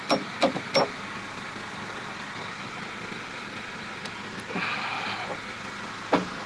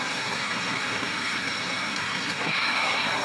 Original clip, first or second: first